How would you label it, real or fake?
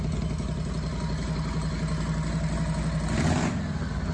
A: real